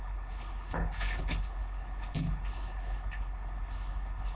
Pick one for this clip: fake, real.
fake